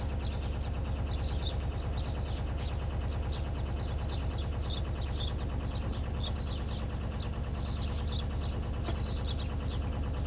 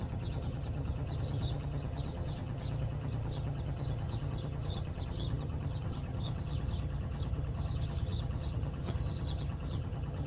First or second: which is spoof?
second